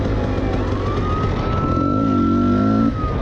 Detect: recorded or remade recorded